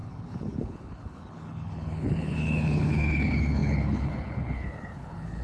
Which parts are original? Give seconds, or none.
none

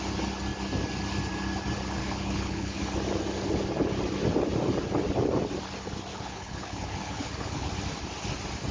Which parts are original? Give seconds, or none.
0.0-2.0; 2.8-6.1; 7.7-8.7

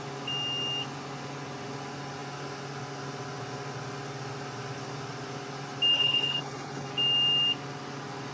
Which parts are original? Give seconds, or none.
0.0-5.9; 6.9-8.3

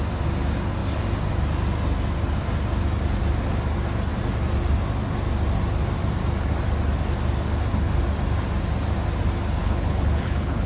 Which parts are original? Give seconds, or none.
0.0-9.6

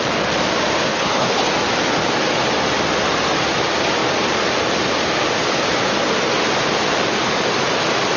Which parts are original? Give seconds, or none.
0.0-0.9; 1.5-8.2